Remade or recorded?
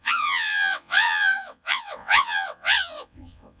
remade